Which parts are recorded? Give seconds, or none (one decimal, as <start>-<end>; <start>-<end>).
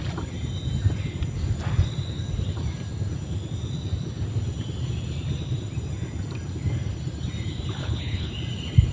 0.0-7.8; 8.3-8.9